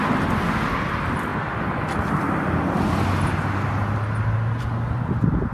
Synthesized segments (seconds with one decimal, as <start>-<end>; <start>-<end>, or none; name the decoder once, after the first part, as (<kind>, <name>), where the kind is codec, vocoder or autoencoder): none